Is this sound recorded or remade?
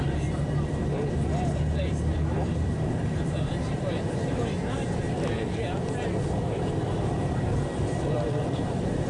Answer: remade